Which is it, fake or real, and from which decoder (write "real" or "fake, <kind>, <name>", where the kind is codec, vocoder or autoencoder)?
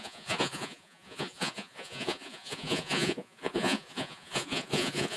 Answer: fake, vocoder, Vocos